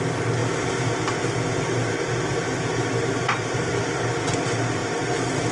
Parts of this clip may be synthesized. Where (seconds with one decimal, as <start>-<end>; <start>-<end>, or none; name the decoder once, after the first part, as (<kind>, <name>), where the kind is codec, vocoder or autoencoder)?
none